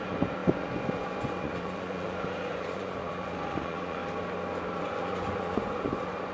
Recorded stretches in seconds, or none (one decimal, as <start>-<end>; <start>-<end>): 4.0-4.8